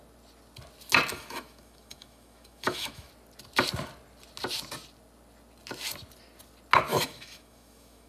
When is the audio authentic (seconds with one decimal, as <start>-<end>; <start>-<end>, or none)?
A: 0.0-1.1; 3.1-6.9